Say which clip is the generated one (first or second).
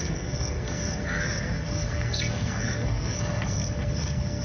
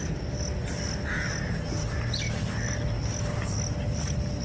first